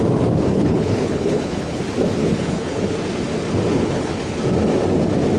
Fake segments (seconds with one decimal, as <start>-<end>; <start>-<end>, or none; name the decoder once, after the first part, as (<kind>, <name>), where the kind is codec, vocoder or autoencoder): 0.5-1.8 (codec, HILCodec); 2.2-2.9; 3.7-4.4